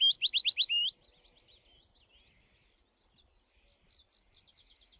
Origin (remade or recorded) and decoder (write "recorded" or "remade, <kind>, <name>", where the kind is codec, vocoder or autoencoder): recorded